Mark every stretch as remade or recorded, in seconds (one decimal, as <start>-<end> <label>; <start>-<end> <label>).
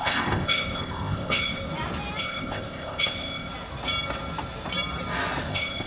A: 0.0-1.7 remade; 1.7-2.2 recorded; 2.2-3.5 remade; 3.5-5.5 recorded; 5.5-5.9 remade